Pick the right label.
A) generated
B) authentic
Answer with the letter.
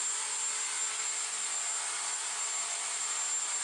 B